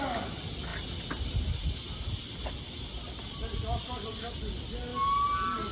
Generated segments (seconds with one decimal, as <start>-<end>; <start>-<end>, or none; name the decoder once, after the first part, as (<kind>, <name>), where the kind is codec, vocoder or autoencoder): none